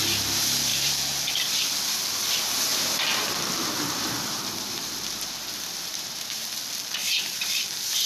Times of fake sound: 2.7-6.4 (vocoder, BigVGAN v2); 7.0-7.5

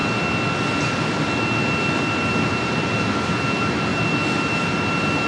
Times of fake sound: none

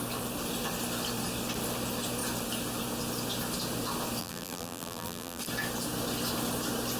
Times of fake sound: 4.2-5.4 (vocoder, BigVGAN v2)